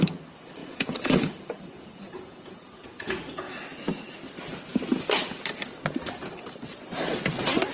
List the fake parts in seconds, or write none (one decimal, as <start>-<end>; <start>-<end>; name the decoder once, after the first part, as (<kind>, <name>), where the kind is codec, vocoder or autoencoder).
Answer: 0.6-3.5 (vocoder, Vocos)